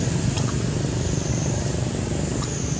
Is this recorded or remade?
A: recorded